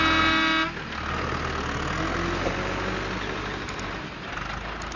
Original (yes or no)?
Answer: yes